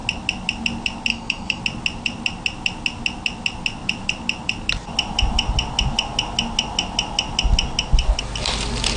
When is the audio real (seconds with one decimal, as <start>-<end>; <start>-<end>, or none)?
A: 0.0-1.1; 1.6-9.0